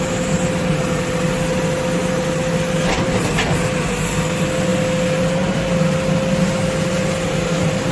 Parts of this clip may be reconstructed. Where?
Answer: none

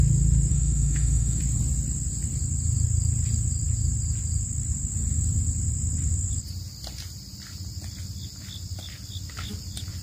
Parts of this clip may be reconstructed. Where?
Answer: 0.5-1.4 (autoencoder, DAC-VAE)

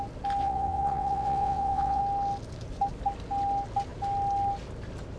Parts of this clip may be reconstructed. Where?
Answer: 0.4-2.0 (vocoder, WaveNeXt)